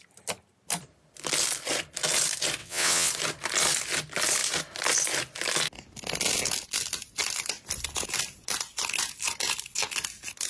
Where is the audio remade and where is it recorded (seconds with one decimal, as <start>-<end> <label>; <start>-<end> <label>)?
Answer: 0.0-2.6 recorded; 2.6-3.1 remade; 3.1-10.5 recorded